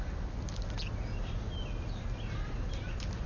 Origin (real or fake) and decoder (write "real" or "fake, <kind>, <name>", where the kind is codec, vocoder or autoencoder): real